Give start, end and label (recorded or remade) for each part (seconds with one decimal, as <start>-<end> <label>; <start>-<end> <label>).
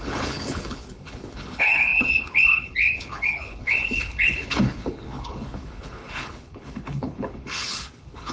0.0-8.3 remade